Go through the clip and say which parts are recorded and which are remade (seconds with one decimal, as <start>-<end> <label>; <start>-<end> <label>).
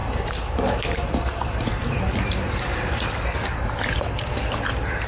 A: 0.0-3.1 remade; 3.1-5.1 recorded